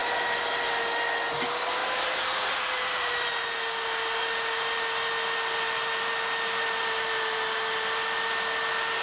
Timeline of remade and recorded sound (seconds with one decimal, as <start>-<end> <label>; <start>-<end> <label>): 0.0-1.8 recorded; 1.8-3.4 remade; 3.4-9.0 recorded